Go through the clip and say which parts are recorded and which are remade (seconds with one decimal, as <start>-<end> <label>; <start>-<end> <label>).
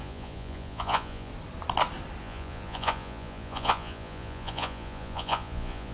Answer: 0.0-1.3 remade; 1.3-2.2 recorded; 2.2-5.9 remade